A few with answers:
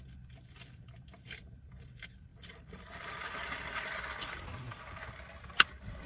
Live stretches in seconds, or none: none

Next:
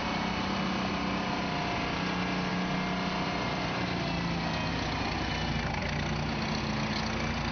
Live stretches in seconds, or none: 0.9-7.5

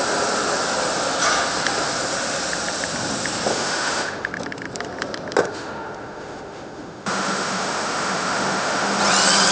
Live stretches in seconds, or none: 0.0-3.5; 4.3-5.4; 9.0-9.5

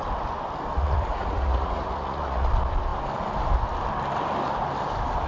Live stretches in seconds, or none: 0.0-0.7; 2.5-5.3